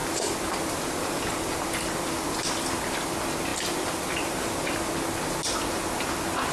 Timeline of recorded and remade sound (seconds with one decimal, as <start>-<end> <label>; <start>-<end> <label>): 0.0-2.8 remade; 2.8-3.5 recorded; 3.5-4.9 remade; 4.9-6.5 recorded